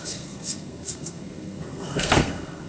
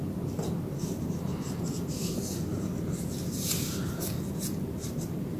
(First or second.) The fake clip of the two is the first